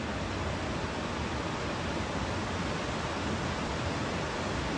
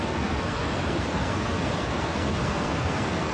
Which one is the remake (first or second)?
second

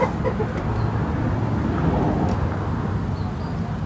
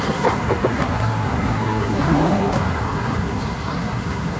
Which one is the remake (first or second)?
second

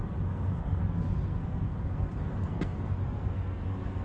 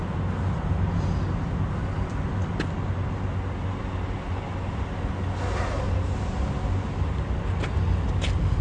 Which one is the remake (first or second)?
first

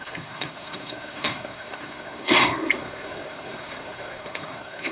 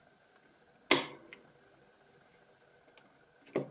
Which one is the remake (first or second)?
first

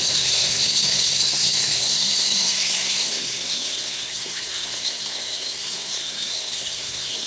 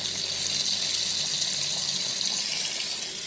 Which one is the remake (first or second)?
first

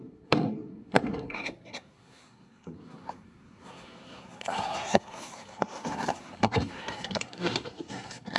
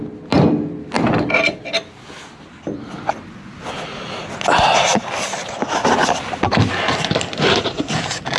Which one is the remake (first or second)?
first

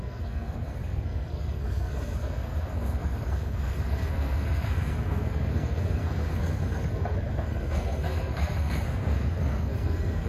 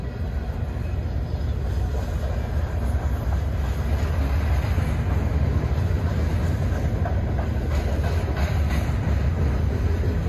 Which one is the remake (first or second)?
first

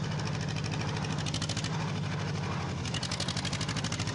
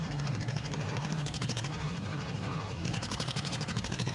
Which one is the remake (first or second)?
second